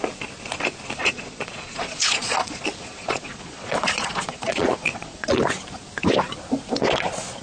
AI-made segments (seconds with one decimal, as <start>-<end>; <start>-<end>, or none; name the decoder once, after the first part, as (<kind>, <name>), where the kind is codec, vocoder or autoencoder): 1.0-5.4 (vocoder, Vocos)